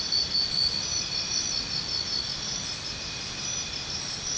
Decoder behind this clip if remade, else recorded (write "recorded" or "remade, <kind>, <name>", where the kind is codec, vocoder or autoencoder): recorded